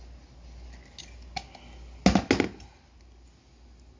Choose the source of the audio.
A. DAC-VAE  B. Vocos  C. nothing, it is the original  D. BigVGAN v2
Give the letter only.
C